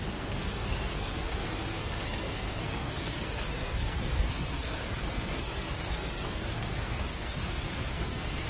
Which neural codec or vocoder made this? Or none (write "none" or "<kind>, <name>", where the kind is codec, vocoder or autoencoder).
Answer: codec, SNAC